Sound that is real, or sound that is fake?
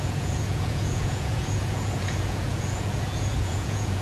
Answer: fake